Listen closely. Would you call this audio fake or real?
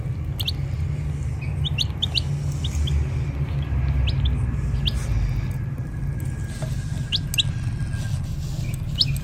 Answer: real